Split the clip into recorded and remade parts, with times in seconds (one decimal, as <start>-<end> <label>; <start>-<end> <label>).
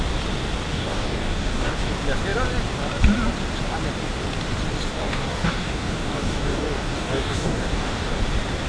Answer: 0.0-0.7 recorded; 0.7-1.9 remade; 1.9-4.9 recorded; 4.9-8.2 remade; 8.2-8.7 recorded